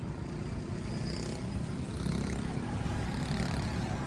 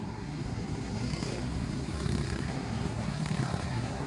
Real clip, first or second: first